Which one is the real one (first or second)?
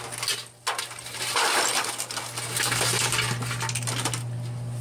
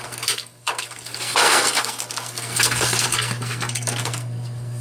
first